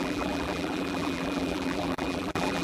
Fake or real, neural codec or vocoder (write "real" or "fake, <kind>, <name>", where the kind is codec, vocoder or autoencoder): fake, vocoder, BigVGAN v2